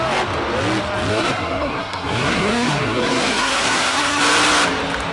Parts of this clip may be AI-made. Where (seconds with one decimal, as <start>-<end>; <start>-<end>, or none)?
1.1-4.2